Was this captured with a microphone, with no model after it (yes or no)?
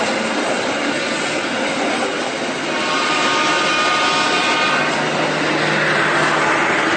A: yes